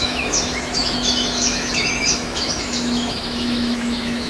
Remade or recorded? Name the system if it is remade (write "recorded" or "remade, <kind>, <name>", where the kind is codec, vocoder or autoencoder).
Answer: remade, autoencoder, DAC-VAE